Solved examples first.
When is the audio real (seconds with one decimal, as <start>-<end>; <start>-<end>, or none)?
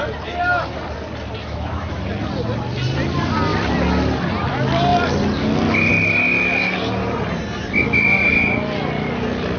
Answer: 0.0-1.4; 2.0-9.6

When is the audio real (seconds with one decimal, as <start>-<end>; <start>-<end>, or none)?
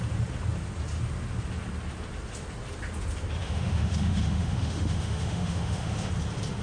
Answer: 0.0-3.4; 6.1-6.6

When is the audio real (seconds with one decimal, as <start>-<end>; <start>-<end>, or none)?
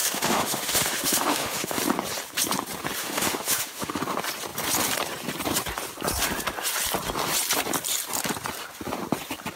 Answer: 1.8-3.0; 4.0-9.6